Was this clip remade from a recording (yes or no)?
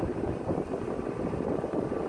no